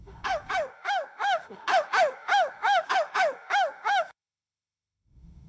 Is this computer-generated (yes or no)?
yes